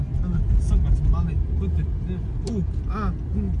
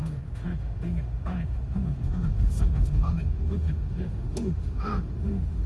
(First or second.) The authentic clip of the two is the first